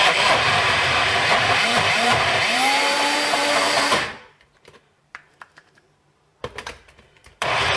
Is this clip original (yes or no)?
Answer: no